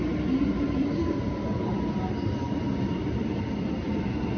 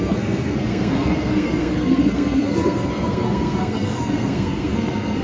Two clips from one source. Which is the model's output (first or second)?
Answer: second